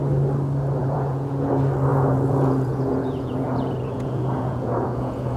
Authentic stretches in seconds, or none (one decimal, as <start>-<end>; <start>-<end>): 0.0-0.8; 1.5-1.9